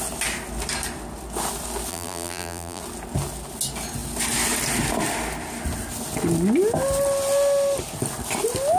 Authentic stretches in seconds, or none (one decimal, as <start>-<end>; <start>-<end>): 0.0-1.9; 2.8-8.8